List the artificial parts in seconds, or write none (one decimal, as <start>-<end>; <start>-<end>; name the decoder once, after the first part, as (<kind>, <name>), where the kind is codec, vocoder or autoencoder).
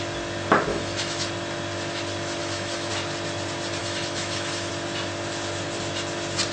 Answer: 0.7-1.3 (autoencoder, DAC-VAE); 2.4-2.9; 3.8-4.7